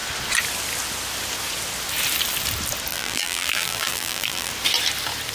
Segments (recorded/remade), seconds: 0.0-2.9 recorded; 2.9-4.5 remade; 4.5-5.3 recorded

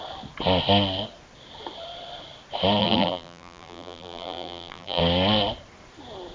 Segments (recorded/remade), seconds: 0.0-2.8 recorded; 2.8-5.0 remade; 5.0-6.3 recorded

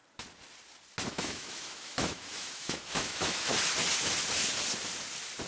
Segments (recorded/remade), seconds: 0.0-1.1 recorded; 1.1-3.5 remade; 3.5-5.5 recorded

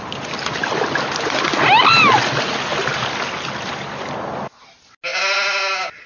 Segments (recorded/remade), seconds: 0.0-6.1 recorded

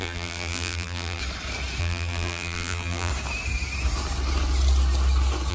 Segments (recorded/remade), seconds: 0.0-1.2 remade; 1.2-1.8 recorded; 1.8-3.1 remade; 3.1-5.5 recorded